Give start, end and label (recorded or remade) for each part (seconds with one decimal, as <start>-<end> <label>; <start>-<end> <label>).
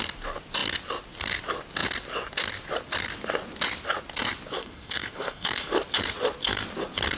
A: 0.0-4.6 recorded; 4.6-5.7 remade; 5.7-7.2 recorded